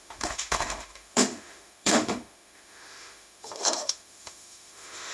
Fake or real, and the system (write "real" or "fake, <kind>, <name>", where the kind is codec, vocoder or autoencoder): fake, autoencoder, DAC-VAE